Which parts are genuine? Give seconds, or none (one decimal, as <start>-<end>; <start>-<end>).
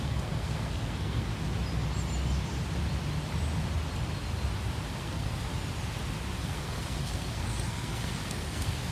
1.3-4.9; 5.5-6.4